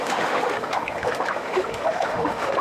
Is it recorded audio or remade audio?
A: remade